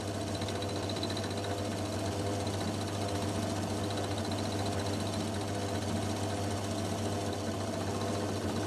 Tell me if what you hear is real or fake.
real